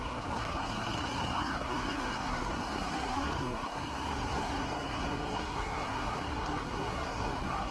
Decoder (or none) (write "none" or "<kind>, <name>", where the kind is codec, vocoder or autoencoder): codec, SNAC